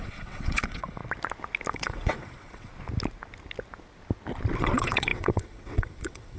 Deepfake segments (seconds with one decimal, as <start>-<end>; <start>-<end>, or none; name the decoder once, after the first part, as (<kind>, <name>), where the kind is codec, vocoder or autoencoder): 0.0-1.0 (vocoder, WaveNeXt); 1.7-2.7; 4.6-6.4